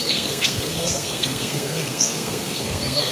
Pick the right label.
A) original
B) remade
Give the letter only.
B